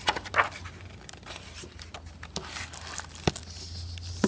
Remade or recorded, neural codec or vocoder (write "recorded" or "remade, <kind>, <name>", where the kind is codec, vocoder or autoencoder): recorded